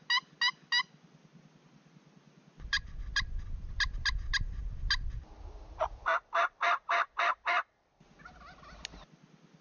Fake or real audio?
real